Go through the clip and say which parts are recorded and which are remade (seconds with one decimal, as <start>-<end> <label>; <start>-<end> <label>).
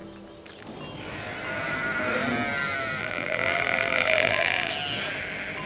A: 0.0-3.0 recorded; 3.0-4.7 remade; 4.7-5.7 recorded